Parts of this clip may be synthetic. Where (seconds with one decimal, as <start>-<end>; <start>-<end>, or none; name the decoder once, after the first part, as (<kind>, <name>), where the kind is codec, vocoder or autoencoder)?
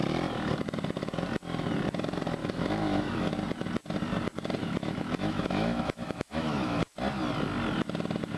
2.4-3.3 (autoencoder, DAC-VAE); 4.6-6.8